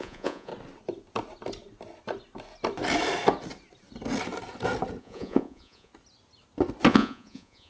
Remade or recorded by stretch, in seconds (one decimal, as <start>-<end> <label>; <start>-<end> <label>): 0.0-0.5 remade; 0.5-5.0 recorded; 5.0-5.9 remade; 5.9-6.9 recorded; 6.9-7.7 remade